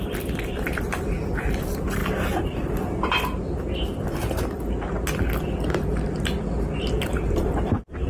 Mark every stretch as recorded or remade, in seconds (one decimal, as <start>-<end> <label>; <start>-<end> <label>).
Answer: 0.0-2.0 remade; 2.0-6.9 recorded; 6.9-8.1 remade

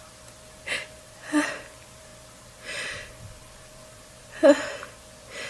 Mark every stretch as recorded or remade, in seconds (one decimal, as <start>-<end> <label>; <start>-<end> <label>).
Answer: 0.0-5.5 remade

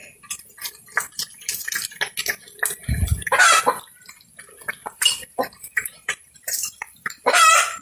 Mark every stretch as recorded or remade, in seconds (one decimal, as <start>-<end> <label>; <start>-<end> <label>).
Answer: 0.0-4.8 recorded; 4.8-7.8 remade

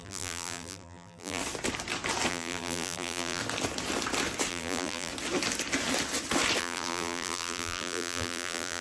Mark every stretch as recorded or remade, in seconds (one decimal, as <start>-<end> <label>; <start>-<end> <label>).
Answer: 0.0-1.4 remade; 1.4-2.3 recorded; 2.3-3.4 remade; 3.4-4.5 recorded; 4.5-5.1 remade; 5.1-6.6 recorded; 6.6-8.8 remade

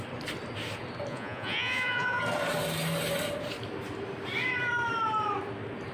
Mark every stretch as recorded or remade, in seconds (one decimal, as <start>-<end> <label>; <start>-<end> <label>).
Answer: 0.0-1.1 recorded; 1.1-2.2 remade; 2.2-5.9 recorded